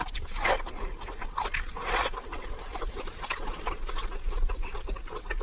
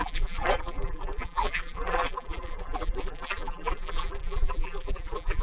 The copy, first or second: second